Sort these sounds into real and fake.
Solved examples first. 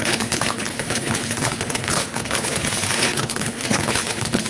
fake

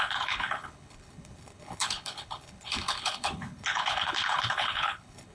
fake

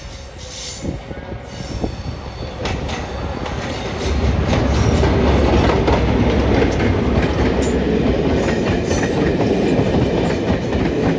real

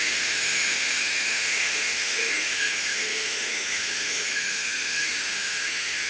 fake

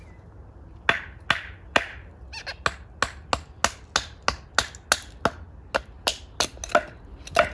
real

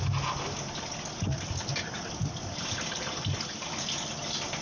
real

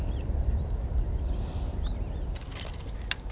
real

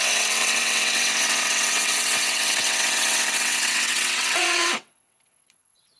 fake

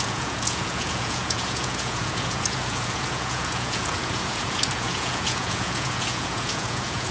fake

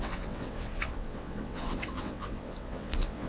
fake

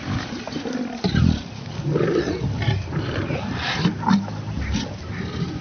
real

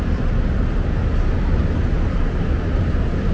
real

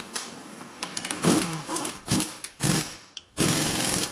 fake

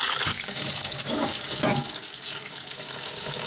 fake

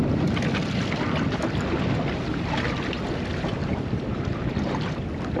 real